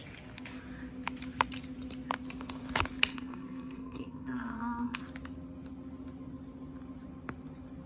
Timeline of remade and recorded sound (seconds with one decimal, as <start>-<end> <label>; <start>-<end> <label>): 0.0-3.1 recorded; 3.1-5.0 remade; 5.0-7.9 recorded

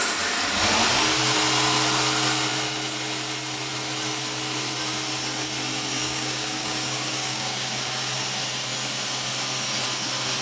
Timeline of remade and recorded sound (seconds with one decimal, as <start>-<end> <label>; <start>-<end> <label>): 0.0-6.0 recorded; 6.0-8.2 remade; 8.2-10.4 recorded